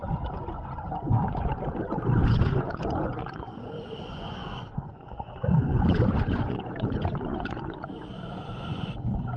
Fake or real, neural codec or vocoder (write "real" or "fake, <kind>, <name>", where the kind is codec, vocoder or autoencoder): fake, vocoder, Vocos